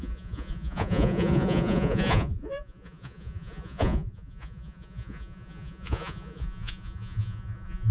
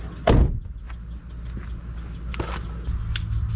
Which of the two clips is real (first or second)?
second